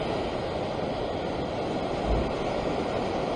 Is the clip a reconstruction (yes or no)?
no